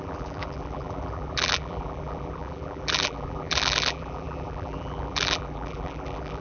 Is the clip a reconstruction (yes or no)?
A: yes